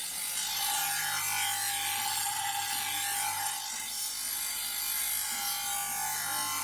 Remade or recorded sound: recorded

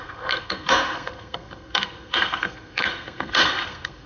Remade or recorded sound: remade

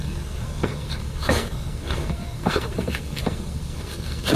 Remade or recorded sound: remade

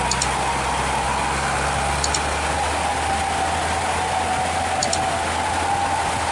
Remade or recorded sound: recorded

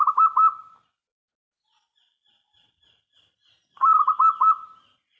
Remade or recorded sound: recorded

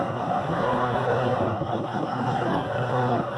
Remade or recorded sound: remade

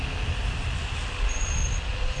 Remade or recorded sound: recorded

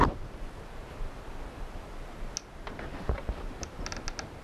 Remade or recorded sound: recorded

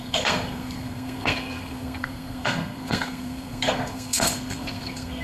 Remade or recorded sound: remade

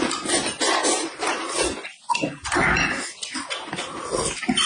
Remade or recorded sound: recorded